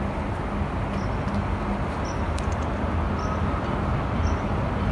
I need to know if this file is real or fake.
real